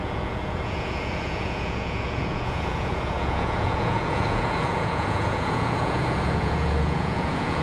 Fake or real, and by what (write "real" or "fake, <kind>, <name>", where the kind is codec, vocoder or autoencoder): fake, vocoder, Vocos